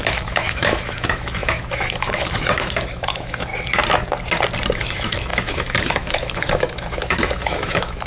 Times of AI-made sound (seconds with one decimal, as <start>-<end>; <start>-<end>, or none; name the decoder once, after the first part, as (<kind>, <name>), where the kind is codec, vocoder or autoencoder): 0.0-3.5 (autoencoder, DAC-VAE); 4.8-8.1